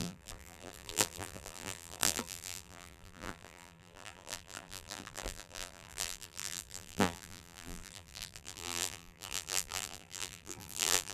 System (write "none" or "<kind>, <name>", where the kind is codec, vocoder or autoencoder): vocoder, BigVGAN v2